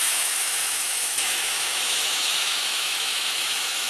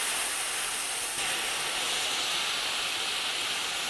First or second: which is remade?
first